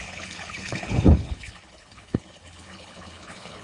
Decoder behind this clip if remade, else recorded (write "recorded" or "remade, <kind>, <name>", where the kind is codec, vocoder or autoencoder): remade, codec, HILCodec